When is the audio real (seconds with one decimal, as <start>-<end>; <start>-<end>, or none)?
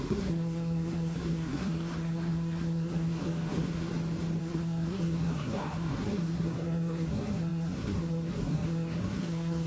3.9-4.4